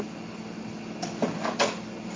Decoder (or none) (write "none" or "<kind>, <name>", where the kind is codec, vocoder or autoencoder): none